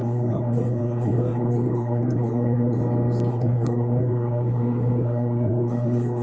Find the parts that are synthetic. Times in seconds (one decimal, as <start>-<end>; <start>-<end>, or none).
0.0-2.8; 3.3-6.2